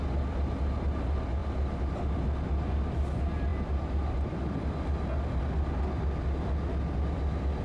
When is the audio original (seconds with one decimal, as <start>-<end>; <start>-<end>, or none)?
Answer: 0.0-7.6